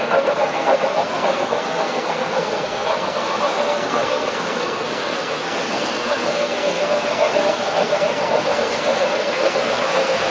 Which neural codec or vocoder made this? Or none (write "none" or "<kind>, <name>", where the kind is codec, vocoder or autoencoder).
codec, SNAC